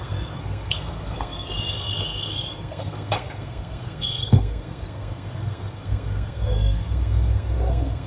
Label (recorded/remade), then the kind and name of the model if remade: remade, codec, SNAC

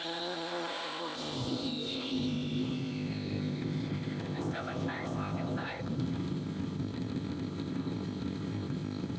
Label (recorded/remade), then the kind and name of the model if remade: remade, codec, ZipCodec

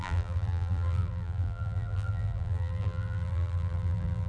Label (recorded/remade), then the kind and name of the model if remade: remade, vocoder, BigVGAN v2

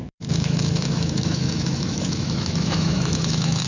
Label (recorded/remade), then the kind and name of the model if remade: remade, autoencoder, DAC-VAE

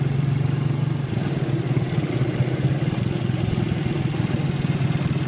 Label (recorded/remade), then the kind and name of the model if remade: recorded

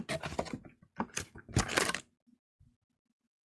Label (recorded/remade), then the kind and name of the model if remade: recorded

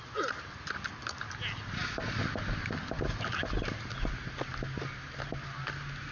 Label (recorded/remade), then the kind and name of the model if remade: recorded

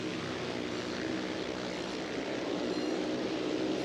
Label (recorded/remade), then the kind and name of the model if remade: recorded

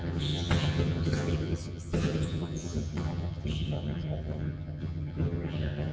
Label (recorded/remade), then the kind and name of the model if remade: remade, vocoder, HiFi-GAN